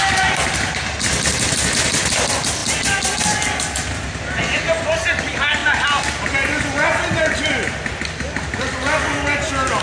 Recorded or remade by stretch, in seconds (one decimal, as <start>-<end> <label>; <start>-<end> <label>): 0.0-9.8 recorded